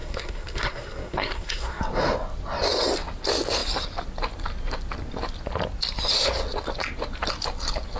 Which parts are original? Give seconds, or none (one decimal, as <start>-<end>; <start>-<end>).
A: 1.8-8.0